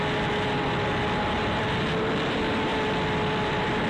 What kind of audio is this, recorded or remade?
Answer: remade